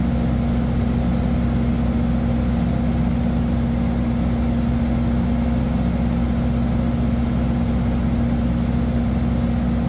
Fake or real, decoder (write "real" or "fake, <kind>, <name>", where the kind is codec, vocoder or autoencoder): real